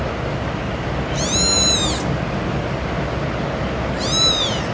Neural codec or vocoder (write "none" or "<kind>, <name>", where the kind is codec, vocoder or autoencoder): none